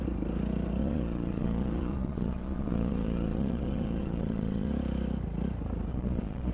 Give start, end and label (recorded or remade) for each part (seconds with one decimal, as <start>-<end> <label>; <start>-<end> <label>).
0.0-0.8 recorded; 0.8-4.7 remade; 4.7-5.9 recorded; 5.9-6.5 remade